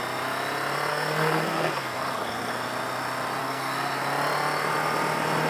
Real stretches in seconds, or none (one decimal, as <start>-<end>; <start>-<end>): 0.0-0.9; 2.5-3.4; 4.0-5.5